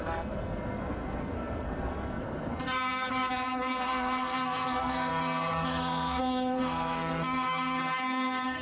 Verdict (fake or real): fake